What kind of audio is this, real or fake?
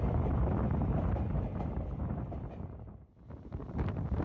fake